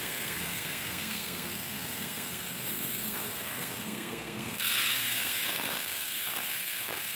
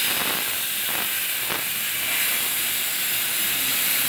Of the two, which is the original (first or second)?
second